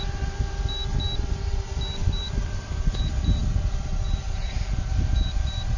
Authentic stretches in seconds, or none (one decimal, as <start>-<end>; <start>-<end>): 0.0-2.0; 3.0-5.8